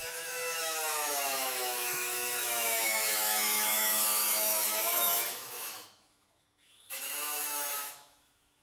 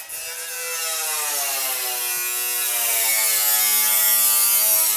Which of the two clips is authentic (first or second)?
second